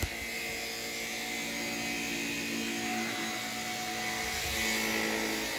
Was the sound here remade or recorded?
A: recorded